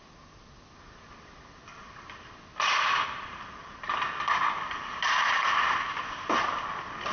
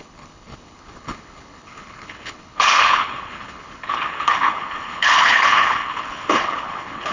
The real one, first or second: first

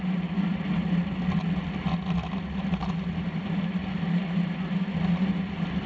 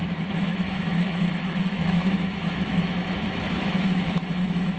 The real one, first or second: first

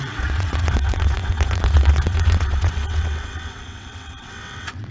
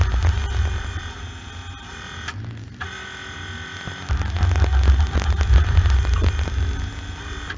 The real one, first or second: second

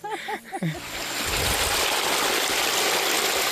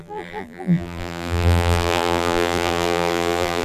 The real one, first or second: first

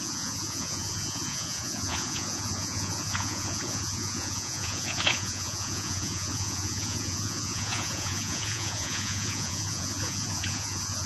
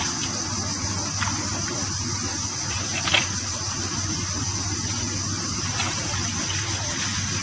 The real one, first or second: second